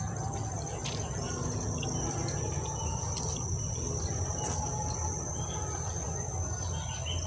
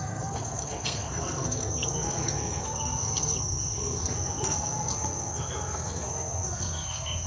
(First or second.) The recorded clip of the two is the first